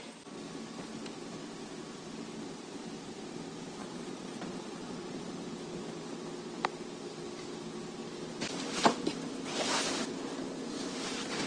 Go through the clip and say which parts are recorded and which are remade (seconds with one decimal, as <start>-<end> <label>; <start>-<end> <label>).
0.0-3.8 recorded; 3.8-5.3 remade; 5.3-11.5 recorded